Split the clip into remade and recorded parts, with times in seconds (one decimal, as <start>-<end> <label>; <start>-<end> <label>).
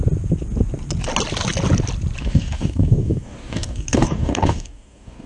0.0-2.2 recorded; 2.2-5.3 remade